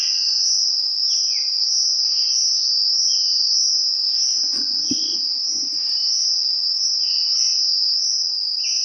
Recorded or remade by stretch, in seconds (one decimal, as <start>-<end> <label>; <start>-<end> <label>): 0.0-8.8 recorded